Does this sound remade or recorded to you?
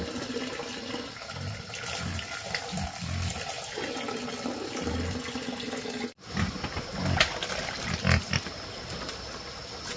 recorded